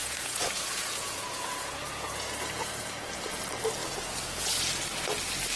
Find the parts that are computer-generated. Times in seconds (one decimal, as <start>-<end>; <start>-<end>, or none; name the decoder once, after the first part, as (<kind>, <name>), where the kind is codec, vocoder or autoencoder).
0.0-3.4 (vocoder, Vocos); 3.8-4.6